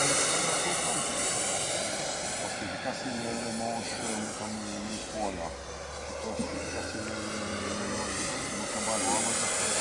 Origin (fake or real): real